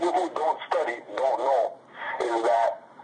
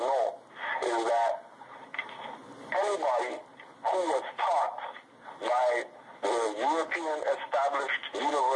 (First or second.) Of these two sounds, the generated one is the first